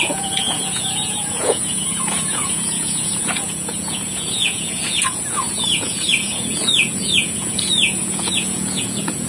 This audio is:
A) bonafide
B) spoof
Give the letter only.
B